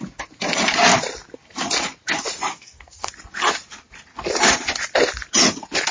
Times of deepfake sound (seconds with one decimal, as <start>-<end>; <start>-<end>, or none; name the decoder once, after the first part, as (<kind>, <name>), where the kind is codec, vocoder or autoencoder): 2.5-3.1 (codec, SNAC)